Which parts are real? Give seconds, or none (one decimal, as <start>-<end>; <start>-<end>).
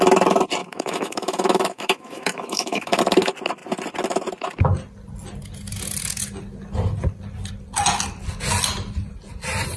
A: 0.0-0.6; 3.0-9.8